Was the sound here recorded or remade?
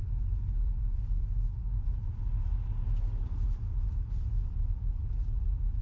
recorded